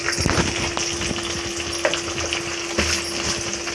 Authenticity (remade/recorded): recorded